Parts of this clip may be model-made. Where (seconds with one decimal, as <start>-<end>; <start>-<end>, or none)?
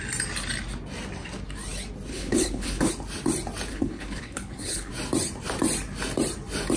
2.1-2.9; 3.7-4.9